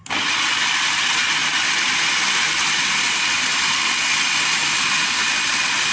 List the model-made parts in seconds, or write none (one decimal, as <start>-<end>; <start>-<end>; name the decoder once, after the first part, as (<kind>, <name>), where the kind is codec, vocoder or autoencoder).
none